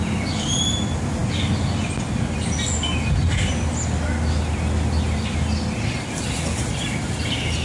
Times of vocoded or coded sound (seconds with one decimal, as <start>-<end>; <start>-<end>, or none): none